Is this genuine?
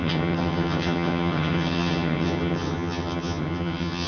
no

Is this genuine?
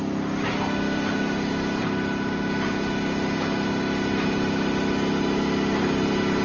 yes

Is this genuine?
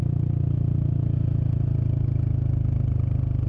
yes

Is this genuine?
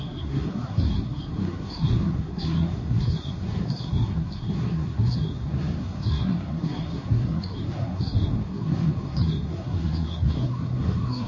no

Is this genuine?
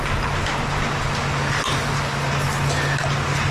yes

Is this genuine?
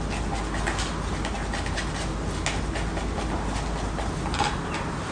yes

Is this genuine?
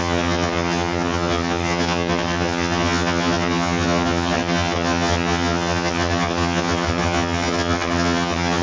no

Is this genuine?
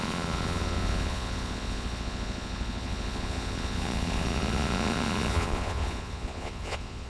no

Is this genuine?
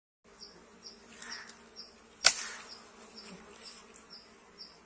yes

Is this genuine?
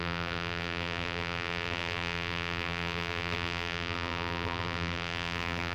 no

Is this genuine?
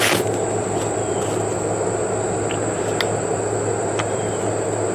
yes